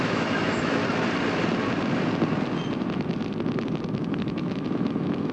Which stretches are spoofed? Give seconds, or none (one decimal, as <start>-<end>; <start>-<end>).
0.0-0.8; 4.0-5.3